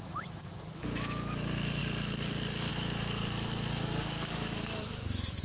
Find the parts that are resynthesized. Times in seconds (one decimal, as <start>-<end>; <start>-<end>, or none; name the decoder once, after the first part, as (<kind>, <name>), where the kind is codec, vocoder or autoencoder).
0.0-1.8 (autoencoder, DAC-VAE); 2.7-3.2; 4.0-5.4

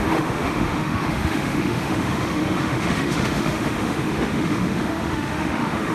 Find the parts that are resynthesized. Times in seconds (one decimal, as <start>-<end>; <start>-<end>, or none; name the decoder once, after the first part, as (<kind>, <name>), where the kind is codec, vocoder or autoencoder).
0.0-5.9 (autoencoder, DAC-VAE)

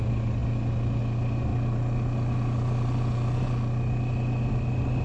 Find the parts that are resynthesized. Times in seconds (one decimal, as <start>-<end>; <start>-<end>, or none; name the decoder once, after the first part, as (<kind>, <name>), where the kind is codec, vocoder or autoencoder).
none

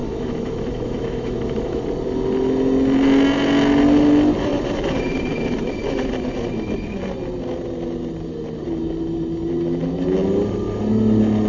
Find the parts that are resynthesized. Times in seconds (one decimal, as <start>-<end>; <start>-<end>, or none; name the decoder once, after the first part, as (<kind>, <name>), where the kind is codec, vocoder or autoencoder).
0.0-1.8 (autoencoder, DAC-VAE)

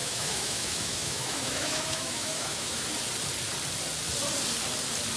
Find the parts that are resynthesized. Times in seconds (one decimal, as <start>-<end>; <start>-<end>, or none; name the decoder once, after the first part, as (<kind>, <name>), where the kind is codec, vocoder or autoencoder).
0.0-2.9 (autoencoder, DAC-VAE)

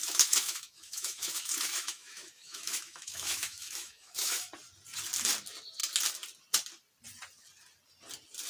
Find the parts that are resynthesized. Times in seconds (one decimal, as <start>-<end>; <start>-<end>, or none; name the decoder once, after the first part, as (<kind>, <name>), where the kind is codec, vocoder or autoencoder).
0.0-4.5 (autoencoder, DAC-VAE)

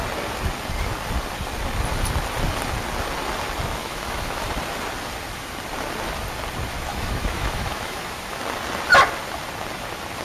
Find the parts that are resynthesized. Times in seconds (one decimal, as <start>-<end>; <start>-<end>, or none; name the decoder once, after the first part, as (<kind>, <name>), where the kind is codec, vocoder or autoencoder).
3.8-4.4 (autoencoder, DAC-VAE); 6.9-8.4